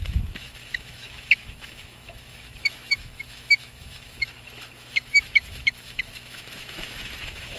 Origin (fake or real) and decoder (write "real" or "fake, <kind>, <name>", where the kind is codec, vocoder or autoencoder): fake, autoencoder, DAC-VAE